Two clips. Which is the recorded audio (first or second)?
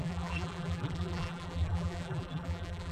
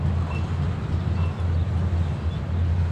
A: second